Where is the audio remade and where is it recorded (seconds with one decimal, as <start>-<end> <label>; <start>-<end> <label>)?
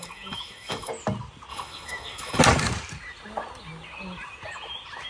0.0-0.9 remade; 0.9-1.5 recorded; 1.5-2.4 remade; 2.4-5.1 recorded